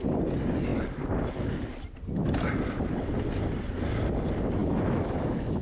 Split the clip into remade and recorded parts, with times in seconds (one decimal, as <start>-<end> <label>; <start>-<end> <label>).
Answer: 0.0-4.6 recorded; 4.6-5.6 remade

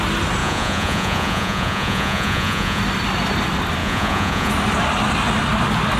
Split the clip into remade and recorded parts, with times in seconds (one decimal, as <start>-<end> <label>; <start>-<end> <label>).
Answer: 0.0-0.4 recorded; 0.4-2.8 remade; 2.8-3.8 recorded; 3.8-4.5 remade; 4.5-6.0 recorded